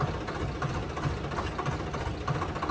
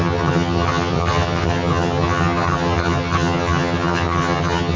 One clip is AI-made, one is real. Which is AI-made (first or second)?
second